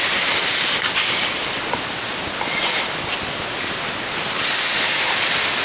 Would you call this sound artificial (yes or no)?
no